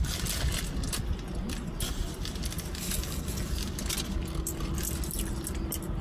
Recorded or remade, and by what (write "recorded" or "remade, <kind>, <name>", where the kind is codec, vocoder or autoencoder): recorded